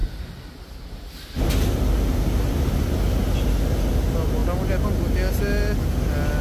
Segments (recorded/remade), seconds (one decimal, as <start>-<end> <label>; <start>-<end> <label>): 0.0-6.4 recorded